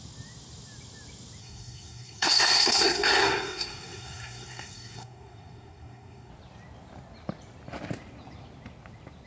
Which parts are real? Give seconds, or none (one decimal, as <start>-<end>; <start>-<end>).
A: 0.0-1.4; 6.3-9.3

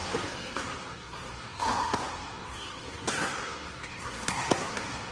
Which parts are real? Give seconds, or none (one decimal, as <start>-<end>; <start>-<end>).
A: none

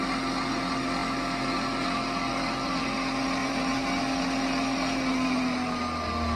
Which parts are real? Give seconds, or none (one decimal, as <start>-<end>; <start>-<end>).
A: 0.0-3.4; 4.0-6.4

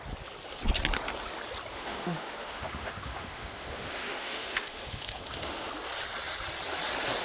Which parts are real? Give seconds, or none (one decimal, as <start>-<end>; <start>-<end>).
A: 0.0-1.7; 5.7-7.2

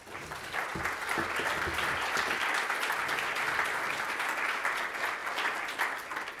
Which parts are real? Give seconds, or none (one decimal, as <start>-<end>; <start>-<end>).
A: 0.0-0.7; 4.5-5.2; 5.8-6.4